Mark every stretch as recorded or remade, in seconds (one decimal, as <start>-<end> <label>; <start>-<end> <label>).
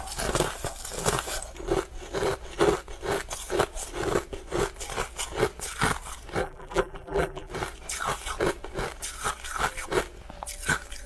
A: 0.0-6.4 recorded; 6.4-7.5 remade; 7.5-11.1 recorded